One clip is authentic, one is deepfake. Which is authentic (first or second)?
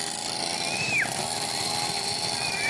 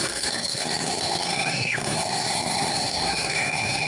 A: first